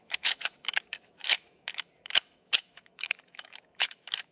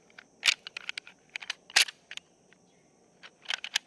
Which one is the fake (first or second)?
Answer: first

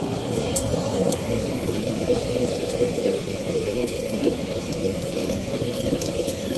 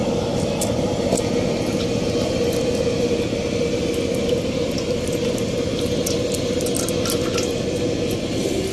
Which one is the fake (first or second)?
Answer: first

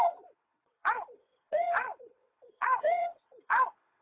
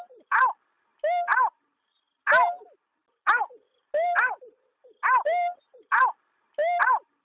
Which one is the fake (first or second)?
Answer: first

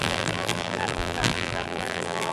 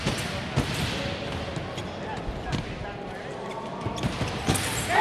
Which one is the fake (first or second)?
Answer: first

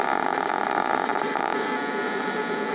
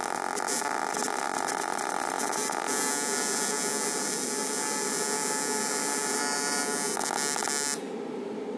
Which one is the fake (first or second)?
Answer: first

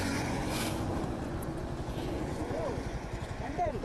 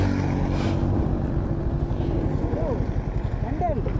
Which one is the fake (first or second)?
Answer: first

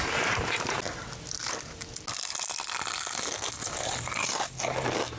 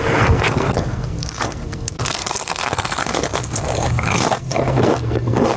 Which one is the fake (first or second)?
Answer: second